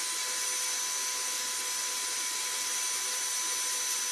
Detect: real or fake real